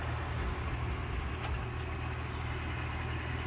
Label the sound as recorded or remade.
recorded